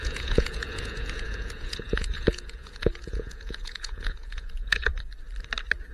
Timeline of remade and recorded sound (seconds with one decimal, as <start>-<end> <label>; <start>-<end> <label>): 0.0-4.9 remade; 4.9-5.9 recorded